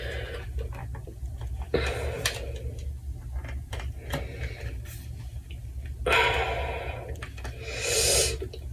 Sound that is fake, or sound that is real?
real